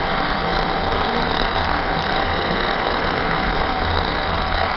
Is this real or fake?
fake